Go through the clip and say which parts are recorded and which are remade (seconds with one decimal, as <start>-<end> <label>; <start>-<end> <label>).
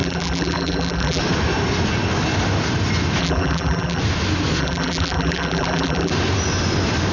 0.0-1.2 remade; 1.2-3.2 recorded; 3.2-4.0 remade; 4.0-4.6 recorded; 4.6-6.1 remade; 6.1-7.1 recorded